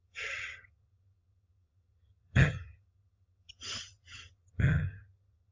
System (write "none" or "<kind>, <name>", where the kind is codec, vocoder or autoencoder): vocoder, HiFi-GAN